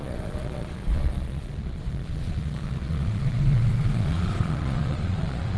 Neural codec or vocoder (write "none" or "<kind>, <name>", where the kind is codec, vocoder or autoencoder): vocoder, Vocos